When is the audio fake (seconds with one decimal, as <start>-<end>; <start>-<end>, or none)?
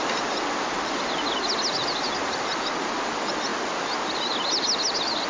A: none